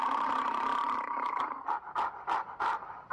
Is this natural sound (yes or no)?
no